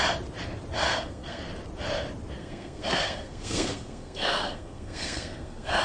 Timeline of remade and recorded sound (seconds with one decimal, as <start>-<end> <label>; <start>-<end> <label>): 0.0-0.9 recorded; 0.9-1.4 remade; 1.4-2.4 recorded; 2.4-5.8 remade